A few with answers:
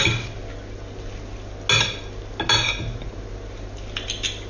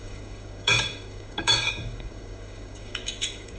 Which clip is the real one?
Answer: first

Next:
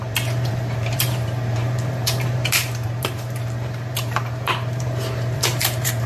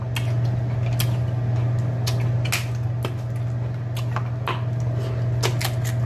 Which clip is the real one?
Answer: second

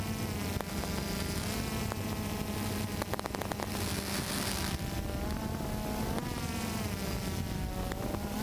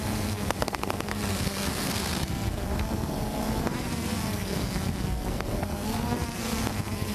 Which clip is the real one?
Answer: first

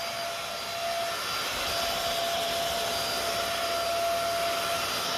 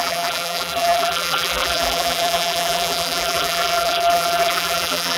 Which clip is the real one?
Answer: first